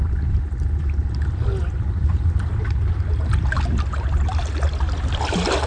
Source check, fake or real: real